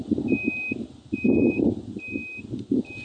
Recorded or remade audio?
recorded